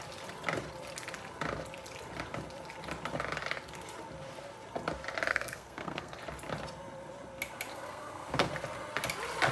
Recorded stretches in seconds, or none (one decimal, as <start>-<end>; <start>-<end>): 0.0-5.3; 6.2-7.7; 8.5-9.5